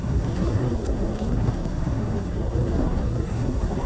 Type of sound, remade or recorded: remade